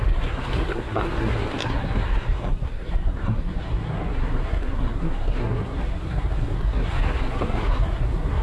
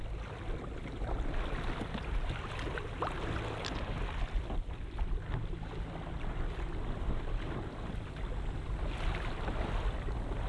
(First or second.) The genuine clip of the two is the second